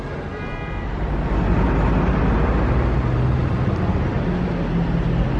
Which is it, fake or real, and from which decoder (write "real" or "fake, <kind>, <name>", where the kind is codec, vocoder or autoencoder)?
real